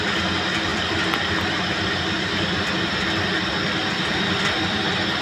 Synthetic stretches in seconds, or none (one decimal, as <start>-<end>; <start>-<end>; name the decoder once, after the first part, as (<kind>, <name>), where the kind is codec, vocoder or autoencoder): none